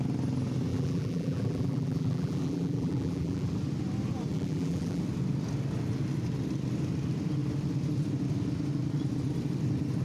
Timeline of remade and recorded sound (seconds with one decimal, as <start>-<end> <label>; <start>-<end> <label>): 0.0-0.7 recorded; 0.7-3.5 remade; 3.5-4.3 recorded; 4.3-5.0 remade; 5.0-10.0 recorded